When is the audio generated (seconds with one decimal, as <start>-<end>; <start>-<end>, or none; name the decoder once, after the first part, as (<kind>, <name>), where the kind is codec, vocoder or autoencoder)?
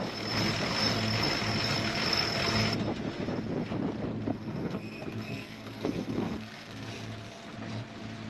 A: 4.3-6.9 (codec, SNAC)